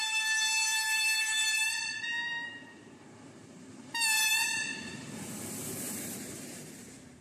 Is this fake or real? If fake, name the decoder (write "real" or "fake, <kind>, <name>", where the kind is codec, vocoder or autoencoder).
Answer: fake, vocoder, BigVGAN v2